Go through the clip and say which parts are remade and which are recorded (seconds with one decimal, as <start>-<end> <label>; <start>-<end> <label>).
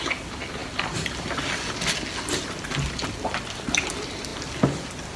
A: 0.0-5.2 recorded